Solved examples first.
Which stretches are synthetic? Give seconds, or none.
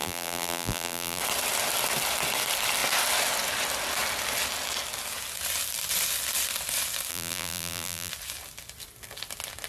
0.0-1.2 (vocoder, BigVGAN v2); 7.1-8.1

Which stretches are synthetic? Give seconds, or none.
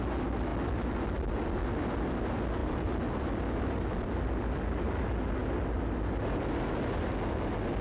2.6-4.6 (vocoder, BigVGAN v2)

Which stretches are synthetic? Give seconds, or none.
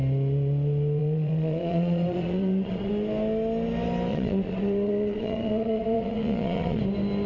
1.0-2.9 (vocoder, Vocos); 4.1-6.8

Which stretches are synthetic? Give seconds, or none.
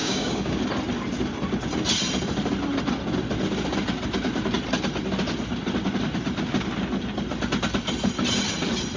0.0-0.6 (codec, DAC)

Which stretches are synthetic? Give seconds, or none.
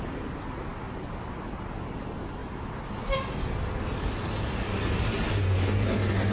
none